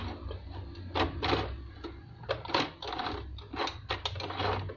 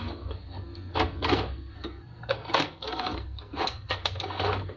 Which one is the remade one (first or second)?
second